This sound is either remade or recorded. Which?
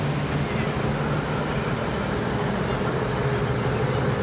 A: recorded